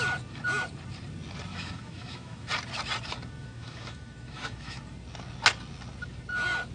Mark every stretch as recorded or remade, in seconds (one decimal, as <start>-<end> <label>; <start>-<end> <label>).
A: 0.0-1.5 recorded; 1.5-2.5 remade; 2.5-3.4 recorded; 3.4-4.8 remade; 4.8-6.7 recorded